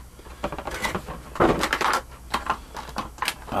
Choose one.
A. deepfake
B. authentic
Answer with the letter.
B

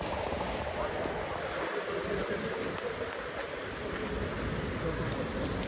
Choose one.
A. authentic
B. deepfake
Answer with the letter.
A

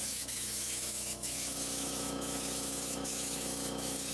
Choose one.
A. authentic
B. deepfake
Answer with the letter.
B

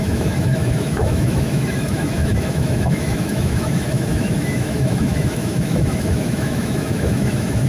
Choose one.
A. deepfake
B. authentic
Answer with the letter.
A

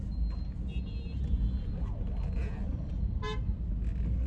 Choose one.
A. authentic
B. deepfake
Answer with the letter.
A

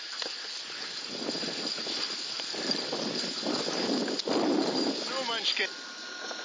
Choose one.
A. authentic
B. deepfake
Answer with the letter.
A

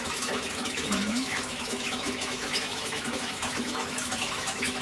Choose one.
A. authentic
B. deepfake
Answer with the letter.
B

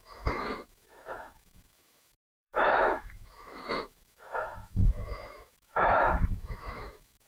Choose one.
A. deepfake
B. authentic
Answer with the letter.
A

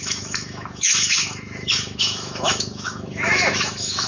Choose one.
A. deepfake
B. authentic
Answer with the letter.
A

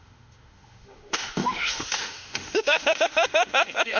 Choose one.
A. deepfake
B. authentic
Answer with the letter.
A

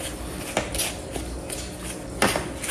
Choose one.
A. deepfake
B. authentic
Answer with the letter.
B